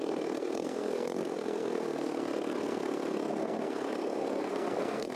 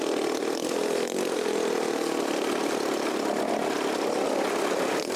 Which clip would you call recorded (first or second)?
second